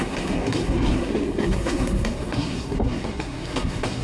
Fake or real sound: fake